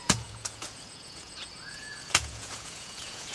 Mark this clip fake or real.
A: fake